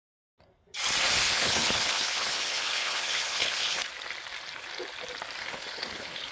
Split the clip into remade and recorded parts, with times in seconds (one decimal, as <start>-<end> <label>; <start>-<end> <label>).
0.0-1.2 recorded; 1.2-3.9 remade; 3.9-5.4 recorded; 5.4-6.3 remade